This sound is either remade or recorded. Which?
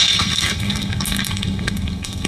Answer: remade